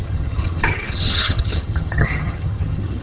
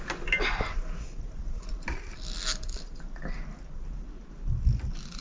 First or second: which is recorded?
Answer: second